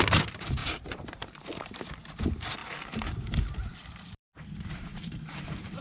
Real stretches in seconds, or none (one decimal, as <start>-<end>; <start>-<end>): 0.0-0.6; 1.8-2.6; 3.3-3.7; 4.4-4.9